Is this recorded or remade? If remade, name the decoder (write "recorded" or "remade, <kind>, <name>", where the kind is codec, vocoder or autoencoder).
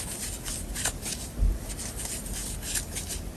recorded